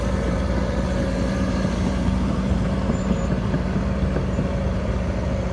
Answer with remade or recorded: remade